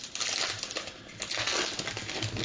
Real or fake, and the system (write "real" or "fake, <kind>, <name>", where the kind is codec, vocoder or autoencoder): real